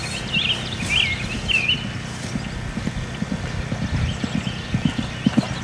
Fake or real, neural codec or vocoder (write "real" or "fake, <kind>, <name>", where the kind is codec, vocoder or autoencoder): real